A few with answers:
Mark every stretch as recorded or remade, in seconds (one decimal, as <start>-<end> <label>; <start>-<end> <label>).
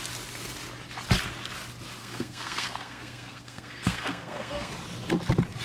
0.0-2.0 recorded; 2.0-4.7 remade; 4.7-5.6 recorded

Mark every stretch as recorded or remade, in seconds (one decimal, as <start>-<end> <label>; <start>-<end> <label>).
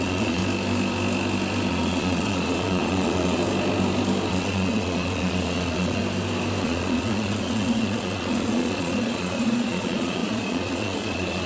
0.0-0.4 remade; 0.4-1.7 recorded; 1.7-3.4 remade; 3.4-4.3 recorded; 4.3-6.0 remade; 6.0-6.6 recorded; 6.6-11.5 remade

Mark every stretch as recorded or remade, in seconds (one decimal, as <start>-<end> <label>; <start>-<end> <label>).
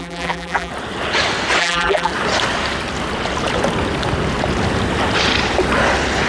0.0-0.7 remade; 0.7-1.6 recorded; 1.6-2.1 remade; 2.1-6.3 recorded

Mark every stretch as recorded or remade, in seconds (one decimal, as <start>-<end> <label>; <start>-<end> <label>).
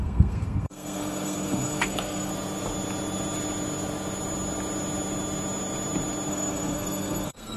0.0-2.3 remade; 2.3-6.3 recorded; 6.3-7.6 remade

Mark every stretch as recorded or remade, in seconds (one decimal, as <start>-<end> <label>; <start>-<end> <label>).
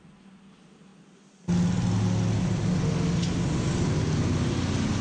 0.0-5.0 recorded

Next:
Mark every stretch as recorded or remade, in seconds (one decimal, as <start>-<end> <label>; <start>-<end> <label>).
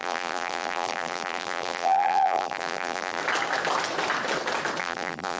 0.0-3.2 remade; 3.2-4.8 recorded; 4.8-5.4 remade